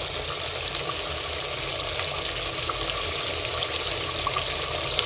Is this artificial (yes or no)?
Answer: no